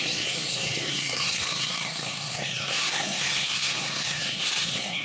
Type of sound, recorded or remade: remade